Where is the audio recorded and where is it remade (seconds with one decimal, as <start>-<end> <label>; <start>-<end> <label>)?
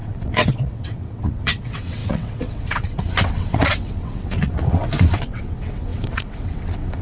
0.0-7.0 remade